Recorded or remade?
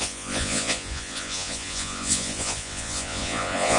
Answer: remade